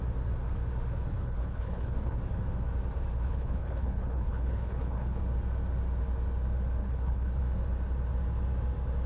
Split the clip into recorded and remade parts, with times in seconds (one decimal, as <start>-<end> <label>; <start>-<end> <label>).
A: 0.0-1.1 recorded; 1.1-2.2 remade; 2.2-3.1 recorded; 3.1-5.2 remade; 5.2-6.8 recorded; 6.8-7.4 remade; 7.4-9.1 recorded